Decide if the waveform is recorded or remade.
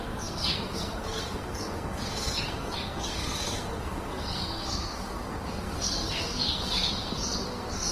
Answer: remade